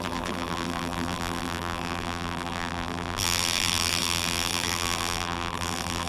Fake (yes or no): yes